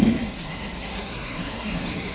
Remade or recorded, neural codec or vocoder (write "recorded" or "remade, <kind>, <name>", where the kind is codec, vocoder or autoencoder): remade, codec, SNAC